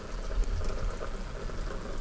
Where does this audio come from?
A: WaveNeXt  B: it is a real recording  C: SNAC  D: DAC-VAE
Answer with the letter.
B